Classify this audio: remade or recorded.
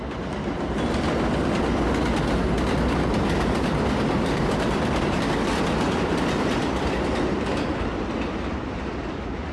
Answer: recorded